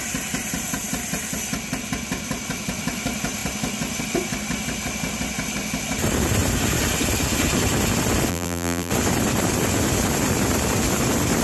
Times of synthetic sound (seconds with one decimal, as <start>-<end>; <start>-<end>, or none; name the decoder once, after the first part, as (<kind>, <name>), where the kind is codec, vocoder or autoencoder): 8.3-8.9 (vocoder, BigVGAN v2)